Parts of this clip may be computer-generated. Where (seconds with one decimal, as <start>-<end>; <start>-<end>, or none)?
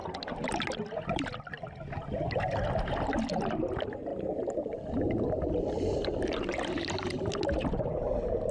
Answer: none